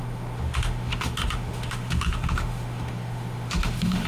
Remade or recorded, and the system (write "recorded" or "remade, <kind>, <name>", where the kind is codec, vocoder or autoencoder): remade, autoencoder, DAC-VAE